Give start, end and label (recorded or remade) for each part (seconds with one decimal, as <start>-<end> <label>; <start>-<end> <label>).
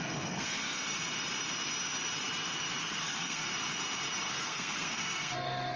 0.0-0.8 remade; 0.8-2.8 recorded; 2.8-3.5 remade; 3.5-4.3 recorded; 4.3-5.8 remade